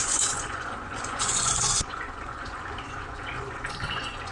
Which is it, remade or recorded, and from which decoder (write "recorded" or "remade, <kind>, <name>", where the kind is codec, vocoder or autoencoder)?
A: remade, vocoder, Vocos